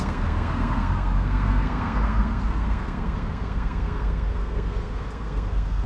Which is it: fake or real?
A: fake